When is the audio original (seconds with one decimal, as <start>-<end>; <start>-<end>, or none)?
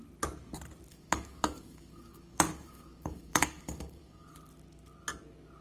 0.0-0.9; 4.3-5.6